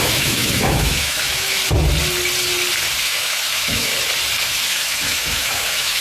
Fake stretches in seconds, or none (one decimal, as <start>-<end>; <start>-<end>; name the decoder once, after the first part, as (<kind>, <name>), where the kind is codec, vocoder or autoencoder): 0.0-1.6 (autoencoder, DAC-VAE); 3.0-3.9; 4.4-6.0